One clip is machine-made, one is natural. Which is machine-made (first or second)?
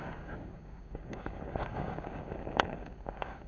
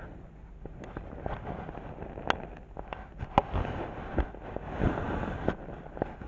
first